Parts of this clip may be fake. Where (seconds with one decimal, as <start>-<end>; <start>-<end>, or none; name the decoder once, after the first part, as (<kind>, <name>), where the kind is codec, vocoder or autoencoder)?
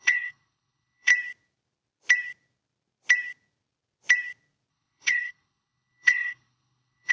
0.0-1.1 (codec, HILCodec); 4.7-7.1